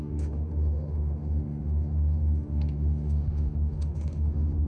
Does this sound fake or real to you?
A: fake